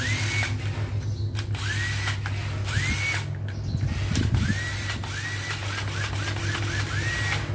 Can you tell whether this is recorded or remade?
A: recorded